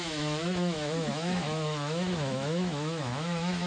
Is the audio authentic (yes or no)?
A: no